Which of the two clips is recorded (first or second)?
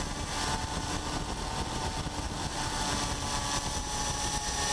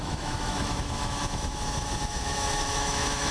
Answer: first